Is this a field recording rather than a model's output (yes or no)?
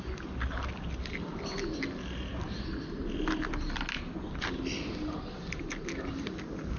yes